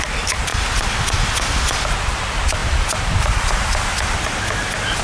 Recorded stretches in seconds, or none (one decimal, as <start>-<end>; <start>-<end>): 0.0-2.6; 3.2-5.0